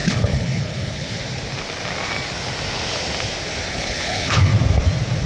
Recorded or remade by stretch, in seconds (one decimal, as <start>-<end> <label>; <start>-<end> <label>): 0.0-1.2 remade; 1.2-3.7 recorded; 3.7-4.5 remade; 4.5-5.3 recorded